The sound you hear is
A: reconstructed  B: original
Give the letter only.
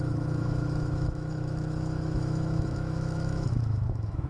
A